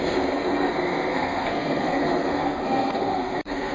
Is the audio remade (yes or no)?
yes